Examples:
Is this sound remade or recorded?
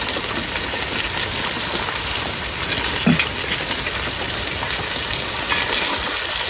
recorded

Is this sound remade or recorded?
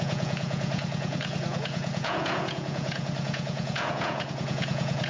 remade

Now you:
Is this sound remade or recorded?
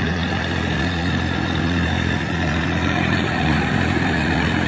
remade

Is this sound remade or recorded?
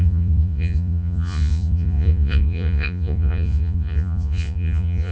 remade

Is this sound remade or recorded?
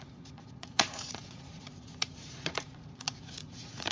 remade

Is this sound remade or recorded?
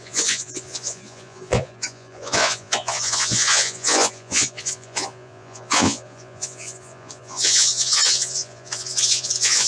remade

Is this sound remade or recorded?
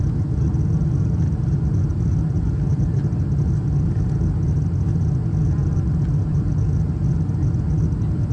recorded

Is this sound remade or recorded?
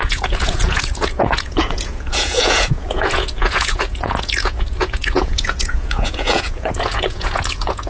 remade